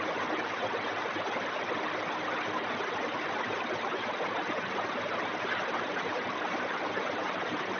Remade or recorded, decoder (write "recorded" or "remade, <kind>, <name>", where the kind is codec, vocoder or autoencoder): recorded